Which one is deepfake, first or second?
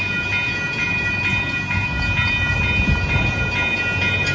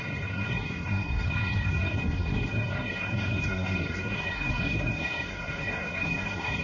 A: second